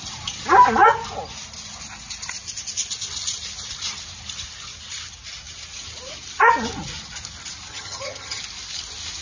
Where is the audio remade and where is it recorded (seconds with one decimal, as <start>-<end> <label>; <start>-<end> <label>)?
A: 0.0-7.7 recorded; 7.7-8.4 remade; 8.4-9.2 recorded